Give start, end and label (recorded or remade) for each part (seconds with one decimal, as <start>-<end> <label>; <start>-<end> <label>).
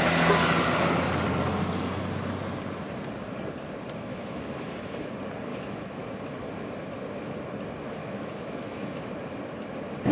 0.0-4.1 recorded; 4.1-5.1 remade; 5.1-5.5 recorded; 5.5-6.0 remade; 6.0-8.0 recorded; 8.0-9.1 remade; 9.1-10.1 recorded